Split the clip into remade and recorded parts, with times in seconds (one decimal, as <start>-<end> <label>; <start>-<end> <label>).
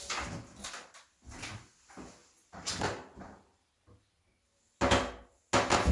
0.0-2.2 recorded; 2.2-4.2 remade; 4.2-5.9 recorded